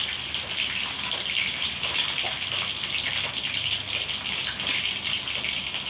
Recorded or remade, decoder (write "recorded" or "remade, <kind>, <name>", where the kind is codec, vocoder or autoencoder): recorded